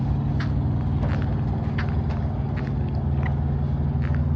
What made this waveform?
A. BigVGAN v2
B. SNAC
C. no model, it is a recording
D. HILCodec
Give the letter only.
C